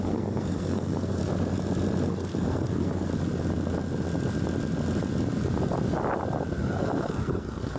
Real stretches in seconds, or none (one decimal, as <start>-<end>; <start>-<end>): 1.2-2.1; 3.1-6.6